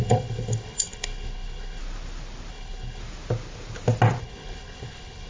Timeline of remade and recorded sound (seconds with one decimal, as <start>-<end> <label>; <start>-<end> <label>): 0.0-1.8 remade; 1.8-2.5 recorded; 2.5-3.0 remade; 3.0-4.2 recorded; 4.2-5.3 remade